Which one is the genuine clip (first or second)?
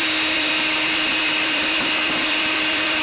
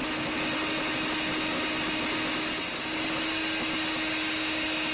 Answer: second